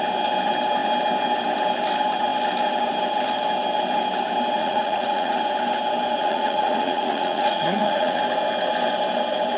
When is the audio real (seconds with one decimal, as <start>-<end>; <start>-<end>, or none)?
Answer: 0.0-4.6; 5.4-6.2; 8.2-9.6